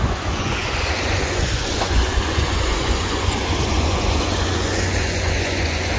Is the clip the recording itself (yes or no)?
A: no